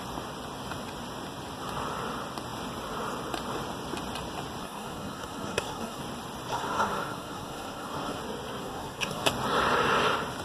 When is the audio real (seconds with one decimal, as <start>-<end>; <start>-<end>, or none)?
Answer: 0.0-4.6; 6.0-6.5; 8.2-8.6; 9.3-10.4